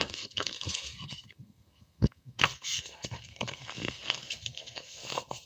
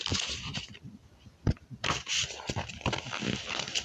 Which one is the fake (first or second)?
first